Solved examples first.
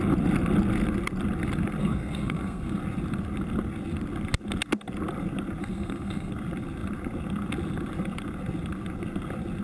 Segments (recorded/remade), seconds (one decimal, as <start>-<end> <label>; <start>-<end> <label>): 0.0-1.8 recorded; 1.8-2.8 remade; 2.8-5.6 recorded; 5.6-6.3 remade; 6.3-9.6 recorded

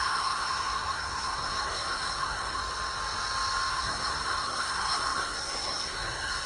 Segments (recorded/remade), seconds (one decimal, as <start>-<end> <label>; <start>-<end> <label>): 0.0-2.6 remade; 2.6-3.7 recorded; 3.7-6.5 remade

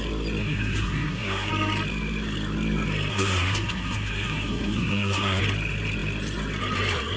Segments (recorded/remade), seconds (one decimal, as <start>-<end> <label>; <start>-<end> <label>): 0.0-0.4 recorded; 0.4-1.5 remade; 1.5-3.1 recorded; 3.1-5.4 remade; 5.4-7.2 recorded

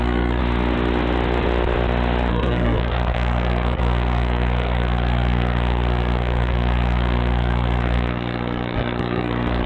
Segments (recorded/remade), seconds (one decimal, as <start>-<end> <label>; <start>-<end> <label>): 0.0-0.4 remade; 0.4-2.3 recorded; 2.3-9.7 remade

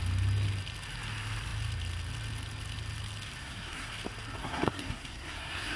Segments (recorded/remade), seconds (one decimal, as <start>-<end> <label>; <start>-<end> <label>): 0.0-3.4 recorded; 3.4-3.9 remade; 3.9-4.4 recorded; 4.4-5.8 remade

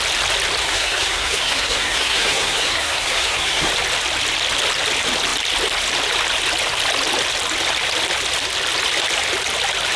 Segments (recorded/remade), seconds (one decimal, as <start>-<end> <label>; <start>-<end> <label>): 0.0-0.6 recorded; 0.6-3.7 remade; 3.7-10.0 recorded

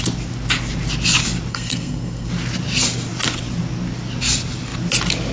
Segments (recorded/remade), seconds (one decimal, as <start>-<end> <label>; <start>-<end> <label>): 0.0-1.5 recorded; 1.5-2.3 remade; 2.3-5.3 recorded

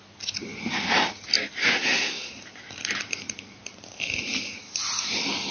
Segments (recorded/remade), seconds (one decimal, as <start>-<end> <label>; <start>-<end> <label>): 0.0-1.6 recorded; 1.6-2.3 remade; 2.3-5.5 recorded